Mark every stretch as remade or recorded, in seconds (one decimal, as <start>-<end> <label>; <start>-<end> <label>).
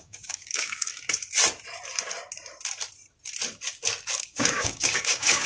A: 0.0-0.9 remade; 0.9-4.2 recorded; 4.2-5.5 remade